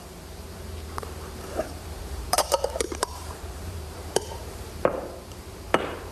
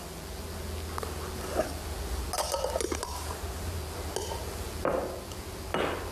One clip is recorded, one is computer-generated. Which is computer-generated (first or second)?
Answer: first